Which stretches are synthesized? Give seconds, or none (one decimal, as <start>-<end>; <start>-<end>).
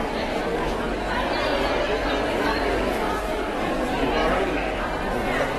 0.5-1.1; 2.5-3.8; 4.2-4.8